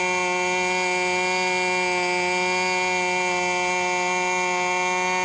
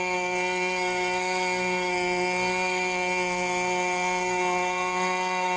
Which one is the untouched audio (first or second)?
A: first